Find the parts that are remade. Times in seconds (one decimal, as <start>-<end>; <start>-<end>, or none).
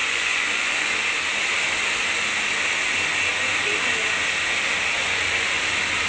0.0-0.9; 5.0-5.6